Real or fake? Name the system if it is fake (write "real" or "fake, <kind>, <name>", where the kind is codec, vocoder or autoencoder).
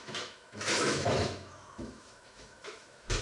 fake, autoencoder, DAC-VAE